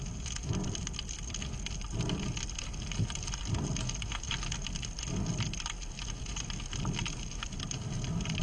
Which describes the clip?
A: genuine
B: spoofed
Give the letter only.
A